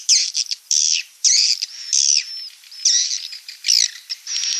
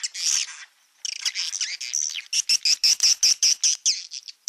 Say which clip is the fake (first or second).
first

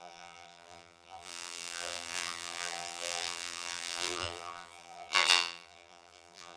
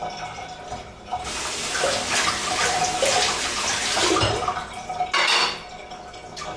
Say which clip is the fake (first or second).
first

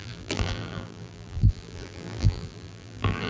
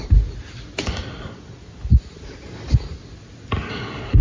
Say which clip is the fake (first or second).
first